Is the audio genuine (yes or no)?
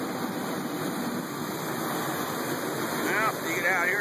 yes